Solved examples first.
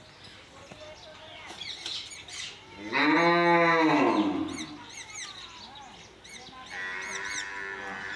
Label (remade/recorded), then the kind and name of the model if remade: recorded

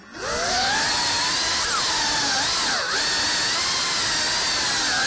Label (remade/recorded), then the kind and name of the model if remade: recorded